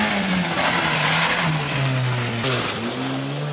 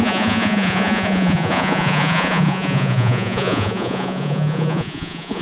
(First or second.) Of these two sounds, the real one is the first